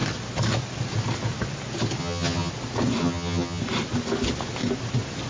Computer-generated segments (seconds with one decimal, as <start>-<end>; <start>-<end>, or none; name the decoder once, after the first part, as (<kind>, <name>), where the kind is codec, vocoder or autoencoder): 2.0-2.5 (vocoder, HiFi-GAN); 3.0-3.6